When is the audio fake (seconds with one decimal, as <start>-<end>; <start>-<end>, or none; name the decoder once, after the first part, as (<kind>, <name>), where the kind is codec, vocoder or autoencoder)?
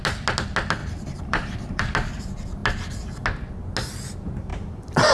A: 0.8-1.8 (vocoder, BigVGAN v2)